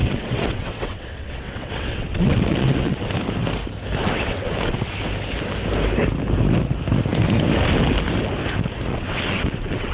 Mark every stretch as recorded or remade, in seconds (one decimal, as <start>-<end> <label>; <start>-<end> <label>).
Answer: 0.0-3.1 remade; 3.1-4.0 recorded; 4.0-4.9 remade; 4.9-8.9 recorded; 8.9-9.9 remade